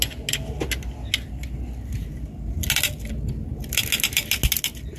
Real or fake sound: real